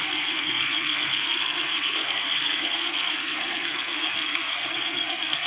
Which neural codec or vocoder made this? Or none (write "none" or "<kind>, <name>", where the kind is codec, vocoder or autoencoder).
codec, SNAC